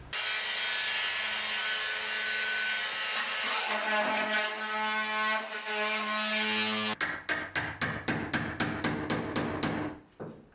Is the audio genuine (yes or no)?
yes